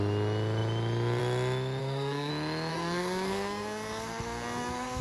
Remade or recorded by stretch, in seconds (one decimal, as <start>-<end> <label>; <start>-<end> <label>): 0.0-1.8 recorded; 1.8-2.3 remade; 2.3-2.7 recorded; 2.7-5.0 remade